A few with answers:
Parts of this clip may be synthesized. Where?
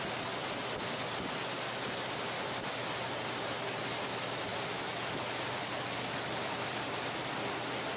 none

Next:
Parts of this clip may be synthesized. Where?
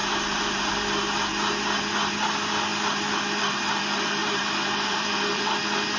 0.0-0.7 (vocoder, BigVGAN v2); 4.2-5.6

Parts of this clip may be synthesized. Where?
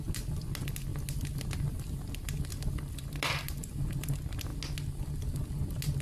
none